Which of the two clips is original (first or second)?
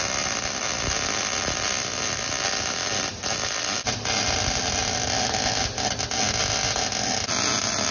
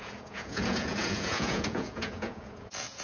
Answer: first